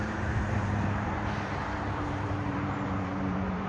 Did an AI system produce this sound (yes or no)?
yes